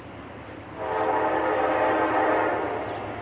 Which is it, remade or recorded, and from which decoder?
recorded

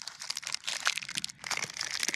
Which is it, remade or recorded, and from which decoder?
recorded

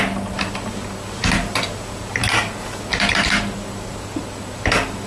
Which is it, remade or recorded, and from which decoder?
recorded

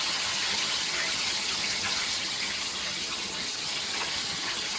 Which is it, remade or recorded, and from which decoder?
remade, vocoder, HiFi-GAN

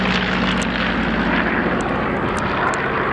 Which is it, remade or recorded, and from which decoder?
recorded